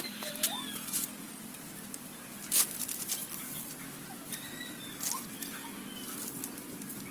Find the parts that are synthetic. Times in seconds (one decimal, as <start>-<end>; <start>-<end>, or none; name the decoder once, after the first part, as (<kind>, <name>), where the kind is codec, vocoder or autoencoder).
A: none